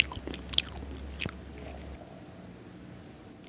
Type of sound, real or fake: real